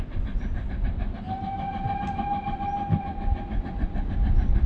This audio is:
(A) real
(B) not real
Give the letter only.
A